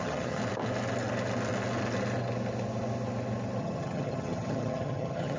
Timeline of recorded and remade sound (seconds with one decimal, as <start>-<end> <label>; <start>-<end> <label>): 0.0-0.4 remade; 0.4-3.6 recorded; 3.6-5.4 remade